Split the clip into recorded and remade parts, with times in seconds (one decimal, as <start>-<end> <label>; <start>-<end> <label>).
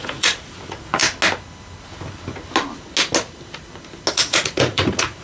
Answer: 0.0-1.0 remade; 1.0-4.1 recorded; 4.1-5.2 remade